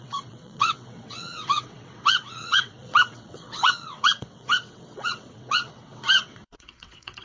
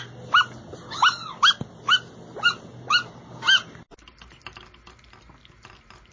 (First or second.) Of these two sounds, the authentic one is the second